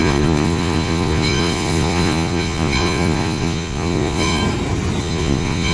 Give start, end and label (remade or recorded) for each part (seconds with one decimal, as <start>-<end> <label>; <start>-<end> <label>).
0.0-4.4 remade; 4.4-5.0 recorded; 5.0-5.7 remade

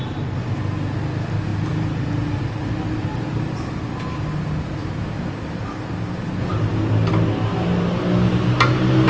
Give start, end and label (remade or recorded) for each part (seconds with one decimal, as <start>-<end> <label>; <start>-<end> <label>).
0.0-9.1 recorded